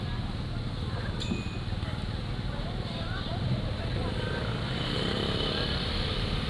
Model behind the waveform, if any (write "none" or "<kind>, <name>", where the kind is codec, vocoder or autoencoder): vocoder, BigVGAN v2